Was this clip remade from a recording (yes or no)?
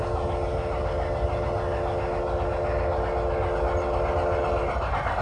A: no